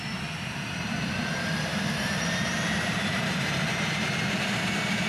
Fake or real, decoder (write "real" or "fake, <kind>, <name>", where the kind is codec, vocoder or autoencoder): fake, vocoder, BigVGAN v2